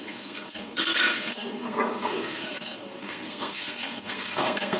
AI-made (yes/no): yes